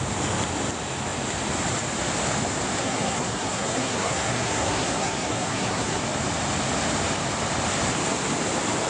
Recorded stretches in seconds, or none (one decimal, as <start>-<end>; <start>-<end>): 0.0-2.8; 6.0-8.9